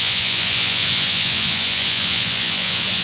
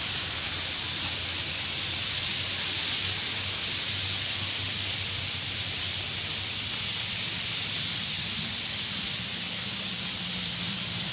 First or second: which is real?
second